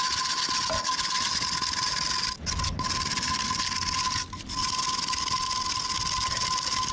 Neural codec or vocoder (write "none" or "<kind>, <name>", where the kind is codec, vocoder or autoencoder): none